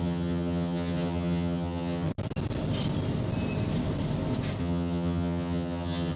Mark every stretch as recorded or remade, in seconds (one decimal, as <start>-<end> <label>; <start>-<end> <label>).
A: 0.0-2.1 remade; 2.1-4.6 recorded; 4.6-6.2 remade